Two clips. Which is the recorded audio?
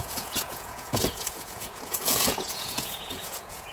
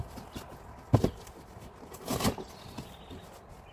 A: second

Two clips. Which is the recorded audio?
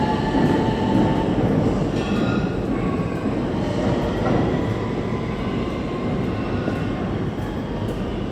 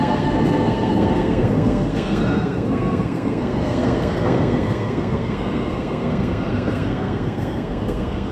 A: first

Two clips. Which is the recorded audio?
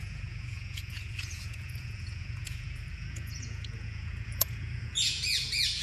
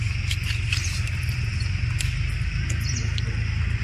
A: second